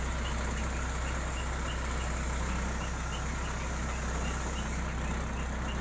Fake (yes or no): no